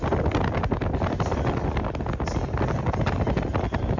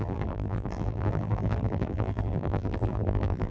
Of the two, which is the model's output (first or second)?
second